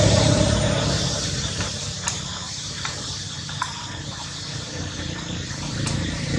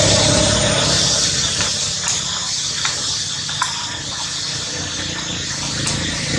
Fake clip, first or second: first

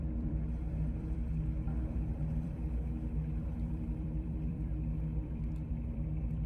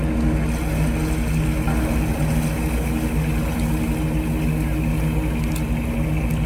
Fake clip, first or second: first